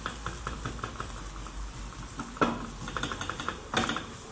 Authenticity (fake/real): real